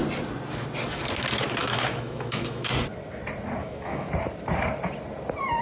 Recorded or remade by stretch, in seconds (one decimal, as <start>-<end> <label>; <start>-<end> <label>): 0.0-1.6 recorded; 1.6-2.7 remade; 2.7-3.6 recorded; 3.6-4.1 remade; 4.1-5.6 recorded